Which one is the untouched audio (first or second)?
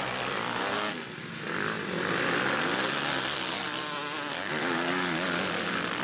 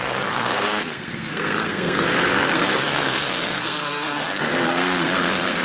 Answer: first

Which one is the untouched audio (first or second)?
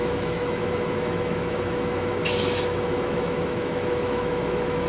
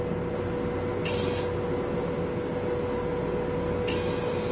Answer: second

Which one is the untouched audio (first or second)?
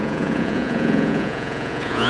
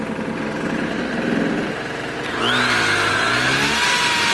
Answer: second